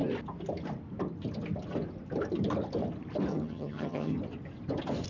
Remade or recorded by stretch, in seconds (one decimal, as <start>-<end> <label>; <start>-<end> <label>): 0.0-3.3 recorded; 3.3-4.2 remade; 4.2-5.1 recorded